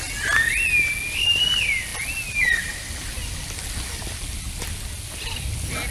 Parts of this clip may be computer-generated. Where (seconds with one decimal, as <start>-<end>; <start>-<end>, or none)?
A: none